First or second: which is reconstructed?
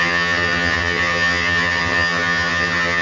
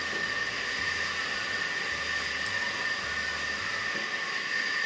first